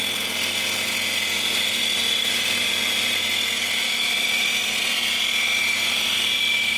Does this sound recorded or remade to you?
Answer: recorded